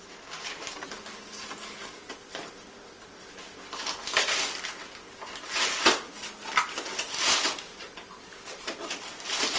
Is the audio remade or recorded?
recorded